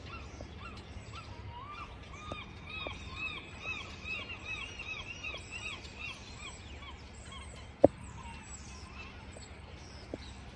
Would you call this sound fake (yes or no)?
no